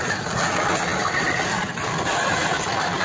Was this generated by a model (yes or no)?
no